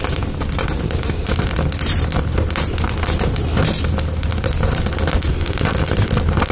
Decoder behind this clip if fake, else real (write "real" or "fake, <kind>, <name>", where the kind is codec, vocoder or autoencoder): real